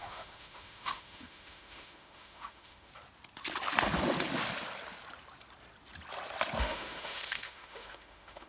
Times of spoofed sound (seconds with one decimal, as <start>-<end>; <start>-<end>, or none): 0.0-2.9; 6.6-8.5